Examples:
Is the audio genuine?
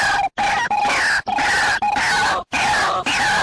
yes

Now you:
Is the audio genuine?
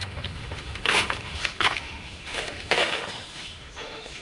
no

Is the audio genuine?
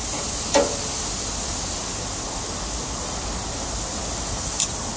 yes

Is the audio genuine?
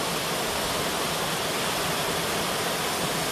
yes